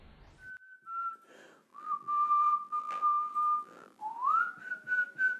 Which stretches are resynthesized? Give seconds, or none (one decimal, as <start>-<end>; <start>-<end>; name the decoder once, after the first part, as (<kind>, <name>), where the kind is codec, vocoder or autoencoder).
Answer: 1.7-4.0 (vocoder, BigVGAN v2)